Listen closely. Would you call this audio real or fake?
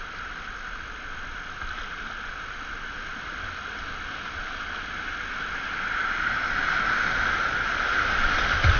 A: real